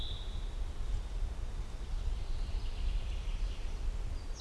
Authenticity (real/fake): real